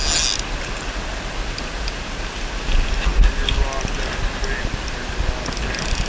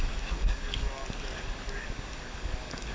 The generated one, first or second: second